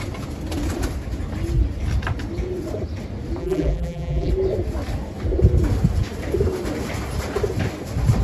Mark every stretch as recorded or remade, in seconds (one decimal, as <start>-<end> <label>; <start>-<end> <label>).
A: 0.0-3.4 recorded; 3.4-4.3 remade; 4.3-8.2 recorded